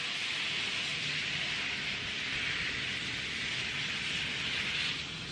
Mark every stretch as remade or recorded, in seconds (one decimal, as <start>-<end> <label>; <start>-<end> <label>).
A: 0.0-5.3 recorded